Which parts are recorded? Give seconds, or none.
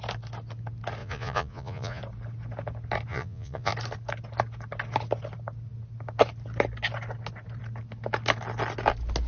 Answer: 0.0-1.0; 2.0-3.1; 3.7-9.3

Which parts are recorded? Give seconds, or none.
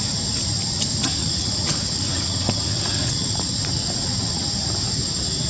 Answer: 0.0-1.2; 4.4-5.5